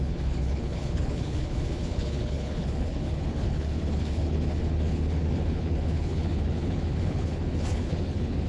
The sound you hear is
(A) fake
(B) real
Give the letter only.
A